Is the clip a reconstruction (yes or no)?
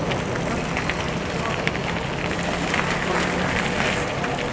no